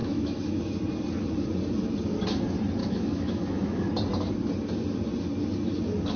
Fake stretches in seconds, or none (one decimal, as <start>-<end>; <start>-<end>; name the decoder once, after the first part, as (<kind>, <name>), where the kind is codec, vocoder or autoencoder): 0.0-0.6 (autoencoder, DAC-VAE); 2.8-3.8